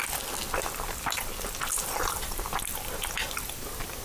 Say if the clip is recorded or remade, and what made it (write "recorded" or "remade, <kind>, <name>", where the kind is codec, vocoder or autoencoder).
recorded